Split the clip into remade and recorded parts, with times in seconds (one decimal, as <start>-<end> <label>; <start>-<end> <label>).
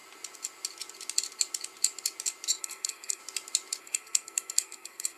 0.0-2.6 recorded; 2.6-3.2 remade; 3.2-3.8 recorded; 3.8-5.2 remade